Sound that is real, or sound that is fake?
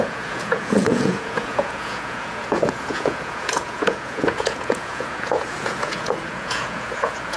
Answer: fake